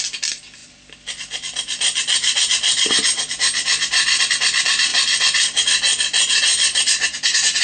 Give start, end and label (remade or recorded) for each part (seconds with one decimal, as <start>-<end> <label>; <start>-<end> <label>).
0.0-7.6 recorded